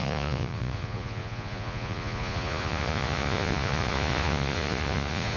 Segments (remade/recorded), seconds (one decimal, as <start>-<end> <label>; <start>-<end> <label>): 0.0-5.4 remade

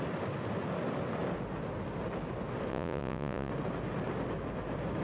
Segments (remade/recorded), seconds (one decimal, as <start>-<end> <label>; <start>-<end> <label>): 0.0-2.7 recorded; 2.7-3.5 remade; 3.5-5.0 recorded